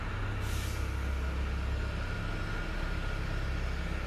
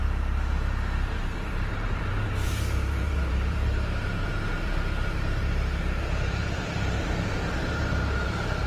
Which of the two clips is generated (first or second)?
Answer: second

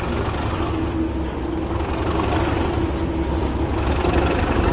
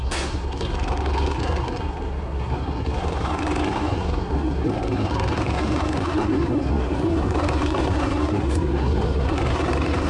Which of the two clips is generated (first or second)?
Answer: second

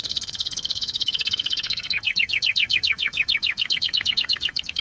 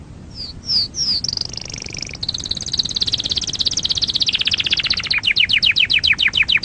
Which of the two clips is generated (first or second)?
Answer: first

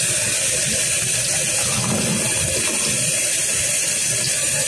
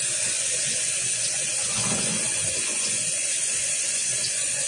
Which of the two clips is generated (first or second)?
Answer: second